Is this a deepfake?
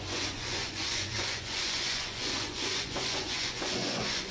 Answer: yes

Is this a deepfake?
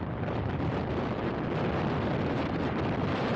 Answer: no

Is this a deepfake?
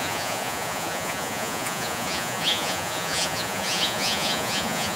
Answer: yes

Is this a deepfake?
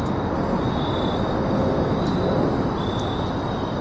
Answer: no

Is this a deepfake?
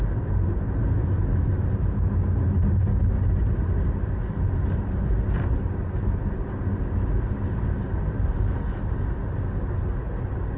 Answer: no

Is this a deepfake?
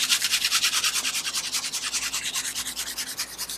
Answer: no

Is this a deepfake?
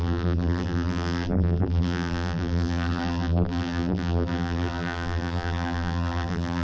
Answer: yes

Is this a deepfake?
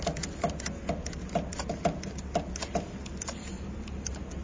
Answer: no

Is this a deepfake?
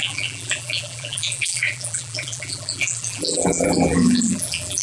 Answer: yes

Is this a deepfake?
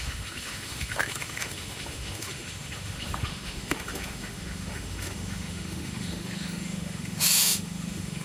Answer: yes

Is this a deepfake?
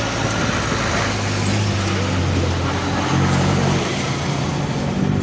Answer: no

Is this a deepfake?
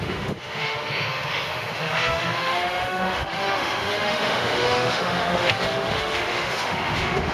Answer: yes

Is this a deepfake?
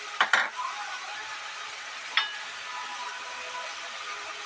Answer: no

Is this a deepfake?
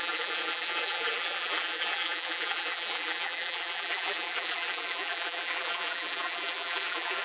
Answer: yes